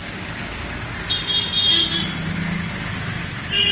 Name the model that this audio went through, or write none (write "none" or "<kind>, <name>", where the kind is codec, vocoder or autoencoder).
none